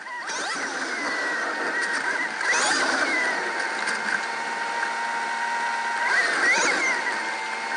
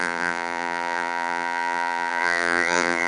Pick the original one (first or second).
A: first